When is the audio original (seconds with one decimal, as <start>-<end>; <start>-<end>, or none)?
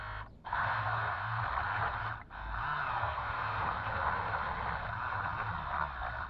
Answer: 0.0-0.4; 1.4-3.0; 3.6-6.3